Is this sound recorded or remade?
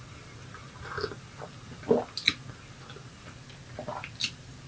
recorded